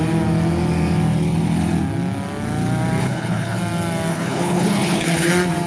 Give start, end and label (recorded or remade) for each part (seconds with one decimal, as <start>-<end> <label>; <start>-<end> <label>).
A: 0.0-3.0 recorded; 3.0-3.6 remade; 3.6-4.1 recorded; 4.1-5.3 remade; 5.3-5.7 recorded